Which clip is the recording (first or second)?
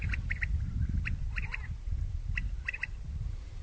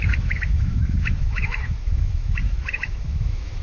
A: first